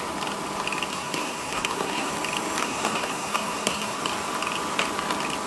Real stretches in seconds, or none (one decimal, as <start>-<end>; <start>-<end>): 0.0-0.9; 2.1-2.6; 4.0-5.5